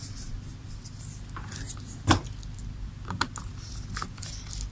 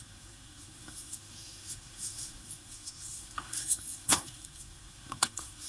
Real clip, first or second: first